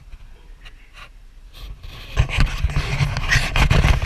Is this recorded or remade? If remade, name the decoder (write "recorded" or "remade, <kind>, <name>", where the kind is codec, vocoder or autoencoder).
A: recorded